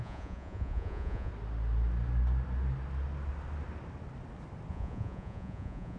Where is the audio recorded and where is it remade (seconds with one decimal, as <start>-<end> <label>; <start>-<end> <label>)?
0.0-1.3 remade; 1.3-4.7 recorded; 4.7-6.0 remade